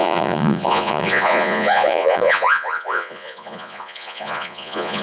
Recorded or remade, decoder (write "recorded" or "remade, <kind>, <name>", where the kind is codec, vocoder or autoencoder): remade, vocoder, Vocos